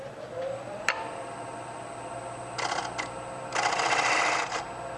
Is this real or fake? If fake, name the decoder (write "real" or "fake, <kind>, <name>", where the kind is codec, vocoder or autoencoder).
real